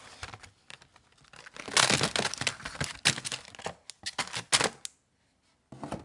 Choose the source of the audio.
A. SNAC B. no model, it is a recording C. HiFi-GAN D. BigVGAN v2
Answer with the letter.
B